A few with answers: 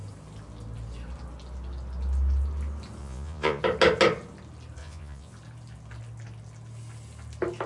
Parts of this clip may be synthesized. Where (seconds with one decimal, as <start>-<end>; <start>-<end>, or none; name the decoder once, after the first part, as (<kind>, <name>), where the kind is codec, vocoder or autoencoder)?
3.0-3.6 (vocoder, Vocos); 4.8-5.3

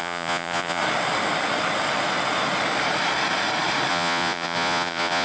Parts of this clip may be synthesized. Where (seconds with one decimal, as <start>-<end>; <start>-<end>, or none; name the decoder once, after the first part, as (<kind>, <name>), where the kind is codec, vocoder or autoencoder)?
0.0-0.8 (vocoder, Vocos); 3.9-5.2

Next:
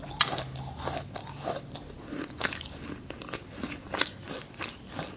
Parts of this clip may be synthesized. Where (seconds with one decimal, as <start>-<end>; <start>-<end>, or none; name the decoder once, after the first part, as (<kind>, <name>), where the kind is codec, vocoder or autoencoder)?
none

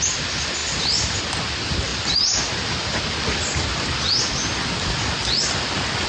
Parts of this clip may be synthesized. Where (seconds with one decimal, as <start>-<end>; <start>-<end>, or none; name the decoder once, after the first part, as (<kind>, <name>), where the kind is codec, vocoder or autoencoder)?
none

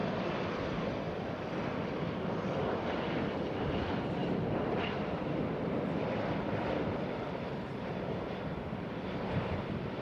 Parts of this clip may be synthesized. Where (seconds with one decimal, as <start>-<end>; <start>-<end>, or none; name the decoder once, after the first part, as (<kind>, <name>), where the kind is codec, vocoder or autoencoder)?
3.3-4.2 (vocoder, BigVGAN v2); 5.0-10.0